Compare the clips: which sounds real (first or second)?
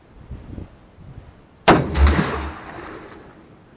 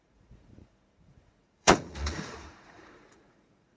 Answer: first